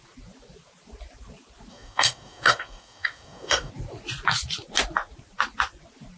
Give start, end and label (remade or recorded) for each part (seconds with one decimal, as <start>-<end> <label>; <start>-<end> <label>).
0.0-1.7 recorded; 1.7-3.7 remade; 3.7-6.2 recorded